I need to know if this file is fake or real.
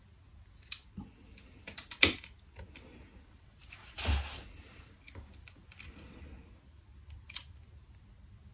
real